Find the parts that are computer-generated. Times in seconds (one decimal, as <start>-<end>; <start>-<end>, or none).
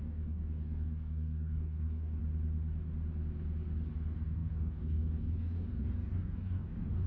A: 0.0-2.2; 3.9-7.1